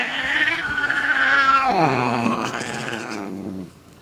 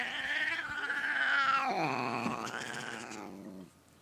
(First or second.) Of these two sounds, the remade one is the first